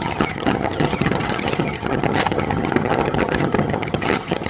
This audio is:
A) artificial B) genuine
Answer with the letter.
A